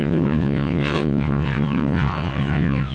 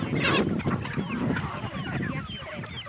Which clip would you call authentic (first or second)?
second